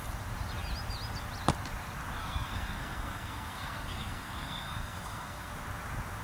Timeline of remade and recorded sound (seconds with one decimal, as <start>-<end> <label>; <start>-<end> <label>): 0.0-2.2 recorded; 2.2-5.5 remade; 5.5-6.2 recorded